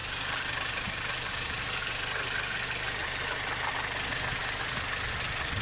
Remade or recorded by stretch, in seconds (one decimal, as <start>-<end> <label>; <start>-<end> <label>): 0.0-1.8 remade; 1.8-3.0 recorded; 3.0-3.7 remade; 3.7-5.6 recorded